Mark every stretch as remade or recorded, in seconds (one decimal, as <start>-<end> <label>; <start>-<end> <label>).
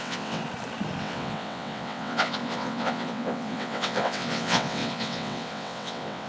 0.0-0.4 remade; 0.4-1.0 recorded; 1.0-6.3 remade